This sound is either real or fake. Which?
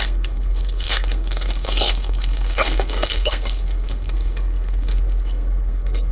fake